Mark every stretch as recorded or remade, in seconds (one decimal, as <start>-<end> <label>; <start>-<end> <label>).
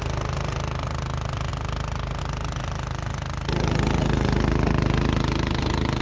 0.0-6.0 recorded